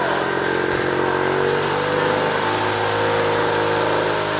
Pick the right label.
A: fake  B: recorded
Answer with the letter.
B